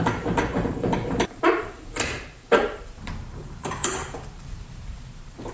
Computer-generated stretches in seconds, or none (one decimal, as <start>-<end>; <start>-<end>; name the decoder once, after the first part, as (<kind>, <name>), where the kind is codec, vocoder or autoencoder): 0.0-5.5 (vocoder, BigVGAN v2)